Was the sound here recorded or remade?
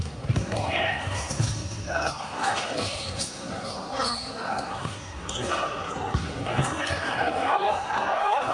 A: remade